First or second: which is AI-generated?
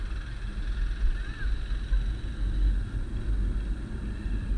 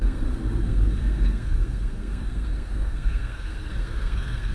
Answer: second